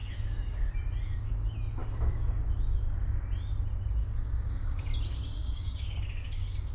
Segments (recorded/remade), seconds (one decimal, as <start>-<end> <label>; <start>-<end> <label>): 0.0-0.7 remade; 0.7-1.8 recorded; 1.8-2.3 remade; 2.3-4.0 recorded; 4.0-4.9 remade; 4.9-5.4 recorded; 5.4-6.7 remade